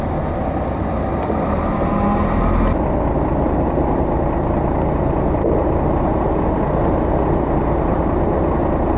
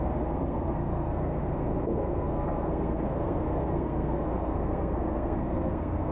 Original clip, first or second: first